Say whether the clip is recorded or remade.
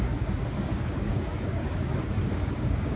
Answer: remade